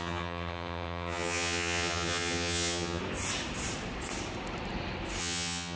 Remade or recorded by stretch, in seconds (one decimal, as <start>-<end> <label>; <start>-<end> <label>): 0.0-3.0 remade; 3.0-5.2 recorded; 5.2-5.8 remade